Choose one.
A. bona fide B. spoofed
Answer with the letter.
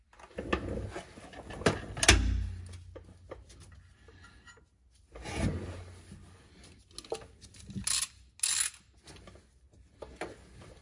A